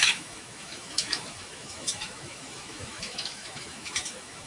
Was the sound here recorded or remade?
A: remade